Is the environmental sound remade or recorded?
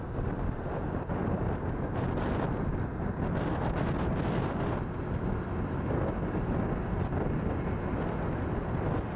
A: recorded